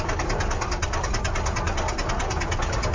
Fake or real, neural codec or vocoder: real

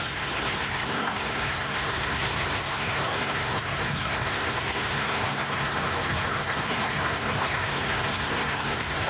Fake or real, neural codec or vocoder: fake, codec, SNAC